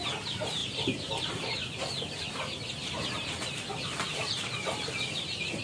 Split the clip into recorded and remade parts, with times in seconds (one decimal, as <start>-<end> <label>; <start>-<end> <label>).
0.0-0.6 recorded; 0.6-2.2 remade; 2.2-2.8 recorded; 2.8-4.5 remade; 4.5-5.6 recorded